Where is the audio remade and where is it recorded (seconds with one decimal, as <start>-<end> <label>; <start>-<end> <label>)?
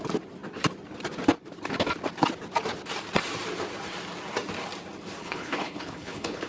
0.0-5.2 recorded; 5.2-6.5 remade